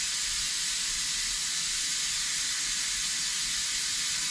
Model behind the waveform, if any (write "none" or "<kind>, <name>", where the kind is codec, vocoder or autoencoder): none